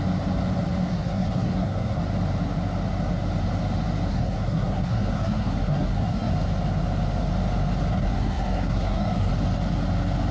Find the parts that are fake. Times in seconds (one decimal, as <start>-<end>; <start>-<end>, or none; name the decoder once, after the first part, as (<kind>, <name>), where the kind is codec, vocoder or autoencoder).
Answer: 0.9-2.0 (codec, SNAC); 4.1-6.3; 7.9-9.3